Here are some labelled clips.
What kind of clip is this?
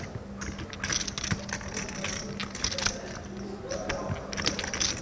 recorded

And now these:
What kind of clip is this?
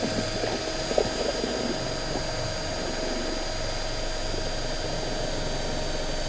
recorded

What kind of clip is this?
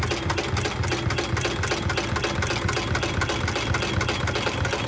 recorded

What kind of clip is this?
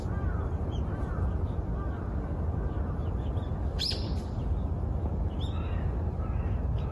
recorded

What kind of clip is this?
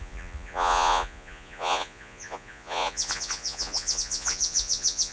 remade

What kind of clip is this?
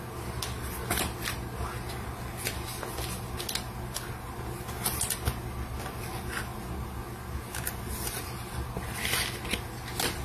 recorded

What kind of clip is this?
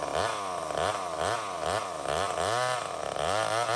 recorded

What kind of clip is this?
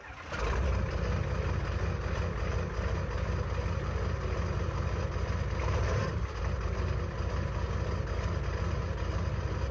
recorded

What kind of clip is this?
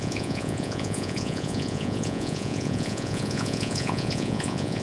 remade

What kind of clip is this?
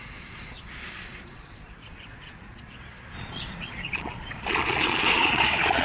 remade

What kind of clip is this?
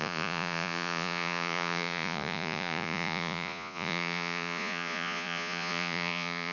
remade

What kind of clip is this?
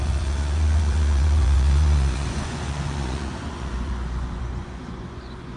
remade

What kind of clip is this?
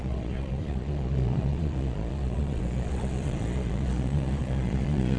remade